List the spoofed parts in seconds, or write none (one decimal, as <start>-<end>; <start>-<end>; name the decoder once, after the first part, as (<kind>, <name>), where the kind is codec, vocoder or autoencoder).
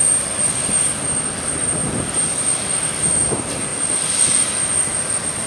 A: none